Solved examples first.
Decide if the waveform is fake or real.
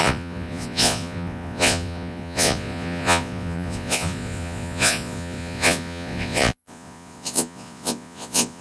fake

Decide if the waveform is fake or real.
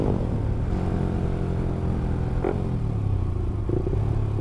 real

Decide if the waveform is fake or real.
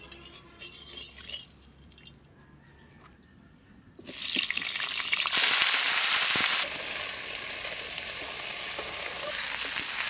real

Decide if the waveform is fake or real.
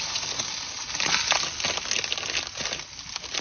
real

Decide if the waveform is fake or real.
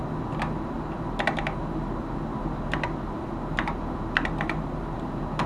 real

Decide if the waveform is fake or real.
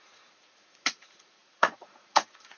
fake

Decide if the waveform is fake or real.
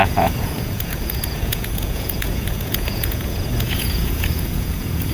fake